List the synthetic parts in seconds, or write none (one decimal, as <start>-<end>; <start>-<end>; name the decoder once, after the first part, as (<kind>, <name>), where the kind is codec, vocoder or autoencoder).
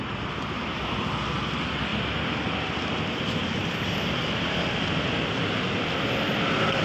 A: 3.6-6.3 (vocoder, BigVGAN v2)